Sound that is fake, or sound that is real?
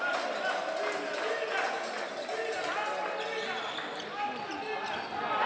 real